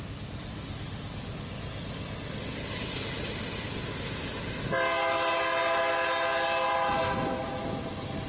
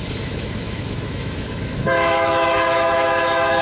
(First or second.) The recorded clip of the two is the first